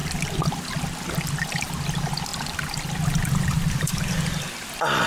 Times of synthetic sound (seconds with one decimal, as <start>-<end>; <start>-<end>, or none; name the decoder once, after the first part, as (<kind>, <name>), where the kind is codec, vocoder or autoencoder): 0.0-5.1 (vocoder, BigVGAN v2)